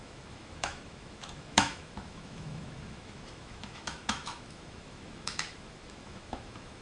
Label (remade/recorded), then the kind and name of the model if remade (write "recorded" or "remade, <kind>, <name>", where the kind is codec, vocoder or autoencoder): remade, autoencoder, DAC-VAE